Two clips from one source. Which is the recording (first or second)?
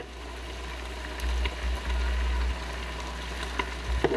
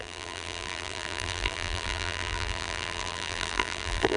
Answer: first